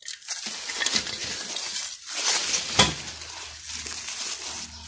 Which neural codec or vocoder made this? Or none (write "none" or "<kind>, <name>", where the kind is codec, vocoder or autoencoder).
none